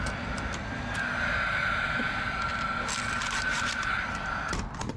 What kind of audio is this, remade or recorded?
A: recorded